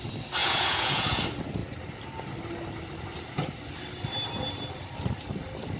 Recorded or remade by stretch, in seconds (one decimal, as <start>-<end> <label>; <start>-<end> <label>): 0.0-0.4 recorded; 0.4-1.2 remade; 1.2-5.8 recorded